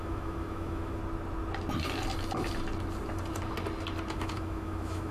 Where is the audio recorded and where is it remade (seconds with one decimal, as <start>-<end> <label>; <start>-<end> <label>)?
0.0-1.0 remade; 1.0-4.1 recorded; 4.1-5.1 remade